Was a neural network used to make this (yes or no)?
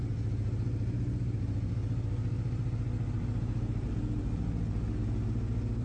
no